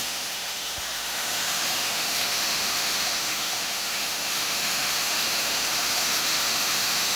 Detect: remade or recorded remade